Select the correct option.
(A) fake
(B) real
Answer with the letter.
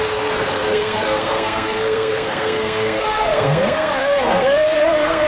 A